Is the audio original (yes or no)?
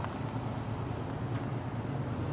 yes